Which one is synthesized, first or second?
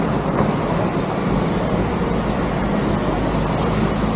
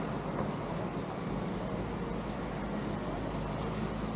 first